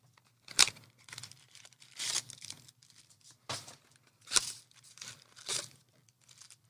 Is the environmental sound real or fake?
fake